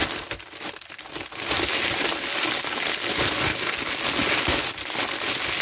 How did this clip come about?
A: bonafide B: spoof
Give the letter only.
A